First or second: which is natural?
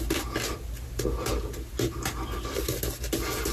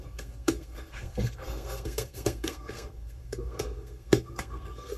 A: first